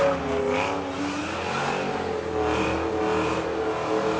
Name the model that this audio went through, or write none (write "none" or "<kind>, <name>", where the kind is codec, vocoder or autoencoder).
none